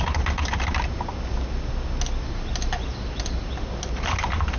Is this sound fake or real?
real